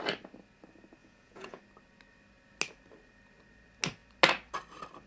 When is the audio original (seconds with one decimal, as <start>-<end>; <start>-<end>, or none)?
0.0-1.0; 1.6-5.1